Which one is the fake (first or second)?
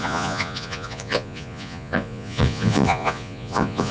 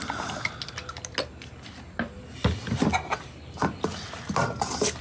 first